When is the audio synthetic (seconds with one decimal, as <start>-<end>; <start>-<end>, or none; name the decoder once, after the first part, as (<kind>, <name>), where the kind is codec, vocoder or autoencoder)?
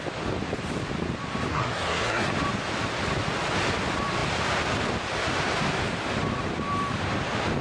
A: 1.5-2.3 (codec, SNAC)